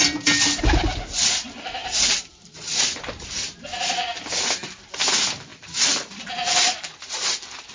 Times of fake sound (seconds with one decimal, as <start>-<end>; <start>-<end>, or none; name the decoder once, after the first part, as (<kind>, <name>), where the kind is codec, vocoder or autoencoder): 1.8-3.7 (vocoder, BigVGAN v2)